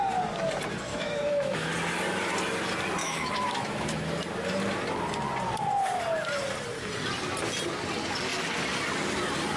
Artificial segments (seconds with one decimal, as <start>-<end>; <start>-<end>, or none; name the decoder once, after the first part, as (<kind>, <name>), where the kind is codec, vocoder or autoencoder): 0.9-1.7 (autoencoder, DAC-VAE); 3.0-4.1